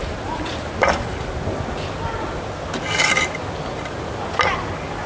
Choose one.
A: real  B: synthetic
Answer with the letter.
A